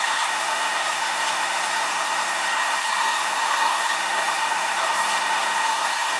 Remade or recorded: remade